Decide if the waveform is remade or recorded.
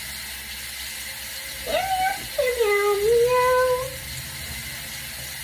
recorded